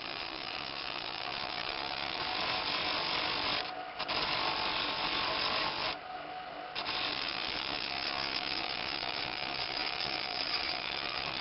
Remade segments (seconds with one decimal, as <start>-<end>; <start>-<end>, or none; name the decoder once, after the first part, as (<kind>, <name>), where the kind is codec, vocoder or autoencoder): 0.0-2.2 (vocoder, Vocos); 7.1-11.4